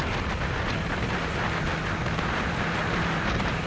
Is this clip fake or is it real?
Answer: real